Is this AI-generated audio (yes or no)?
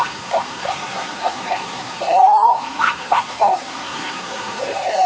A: yes